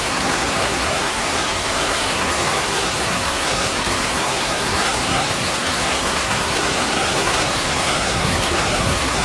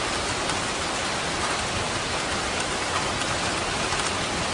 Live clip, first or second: second